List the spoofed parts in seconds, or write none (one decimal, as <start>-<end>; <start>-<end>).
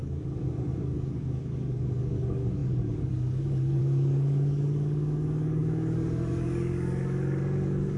0.0-8.0